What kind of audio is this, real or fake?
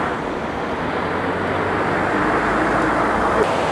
real